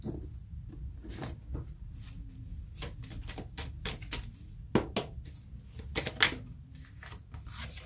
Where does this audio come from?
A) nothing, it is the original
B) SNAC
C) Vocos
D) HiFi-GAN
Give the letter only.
A